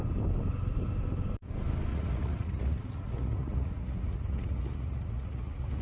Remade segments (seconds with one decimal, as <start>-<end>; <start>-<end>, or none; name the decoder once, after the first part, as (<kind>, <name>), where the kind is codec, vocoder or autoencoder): 1.9-5.8 (vocoder, Vocos)